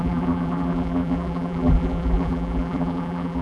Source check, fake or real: fake